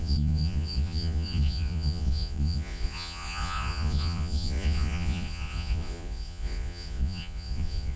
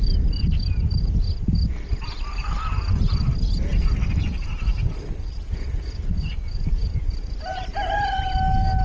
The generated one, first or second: first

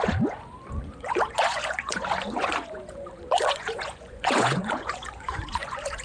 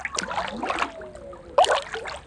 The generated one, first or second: first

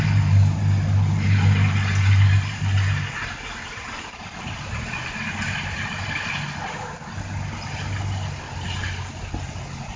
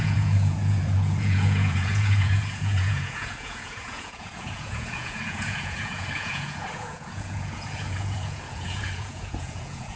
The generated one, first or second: second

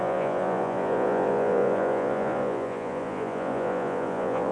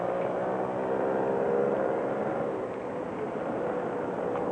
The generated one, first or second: first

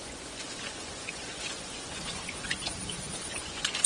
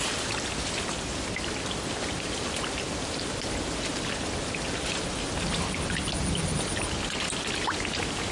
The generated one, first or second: first